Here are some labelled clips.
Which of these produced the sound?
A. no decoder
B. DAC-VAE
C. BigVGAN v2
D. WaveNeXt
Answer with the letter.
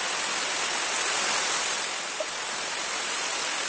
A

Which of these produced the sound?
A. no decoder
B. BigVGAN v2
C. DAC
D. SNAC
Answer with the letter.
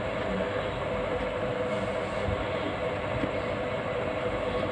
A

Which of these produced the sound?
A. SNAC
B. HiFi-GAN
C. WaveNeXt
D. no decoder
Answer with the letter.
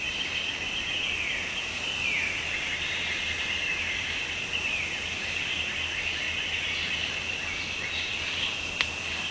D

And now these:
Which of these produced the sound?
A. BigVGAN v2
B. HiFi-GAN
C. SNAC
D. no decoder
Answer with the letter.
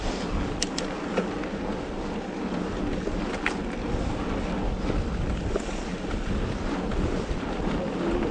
D